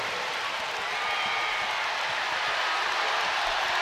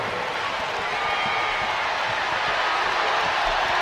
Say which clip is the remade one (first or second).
first